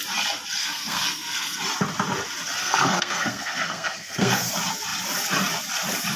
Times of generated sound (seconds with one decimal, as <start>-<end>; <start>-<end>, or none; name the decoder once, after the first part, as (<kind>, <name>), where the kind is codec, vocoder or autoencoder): 0.6-1.6 (codec, SNAC); 2.6-4.5